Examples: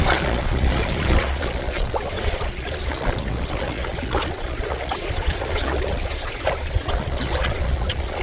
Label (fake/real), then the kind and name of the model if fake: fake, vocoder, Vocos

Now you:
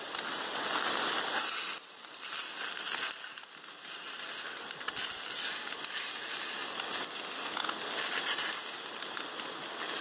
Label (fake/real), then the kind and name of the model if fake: real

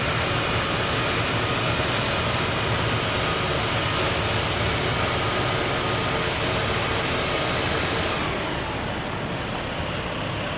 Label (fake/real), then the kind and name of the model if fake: real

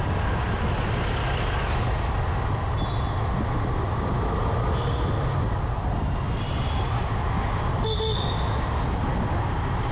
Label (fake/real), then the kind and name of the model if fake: real